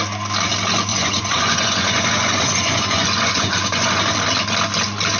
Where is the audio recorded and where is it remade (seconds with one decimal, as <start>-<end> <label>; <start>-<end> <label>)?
0.0-0.9 recorded; 0.9-4.0 remade; 4.0-5.2 recorded